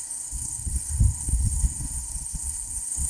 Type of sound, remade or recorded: remade